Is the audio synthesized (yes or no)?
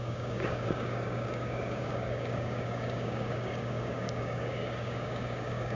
yes